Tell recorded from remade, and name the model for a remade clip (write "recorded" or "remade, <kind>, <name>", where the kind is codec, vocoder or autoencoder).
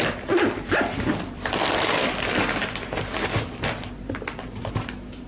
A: recorded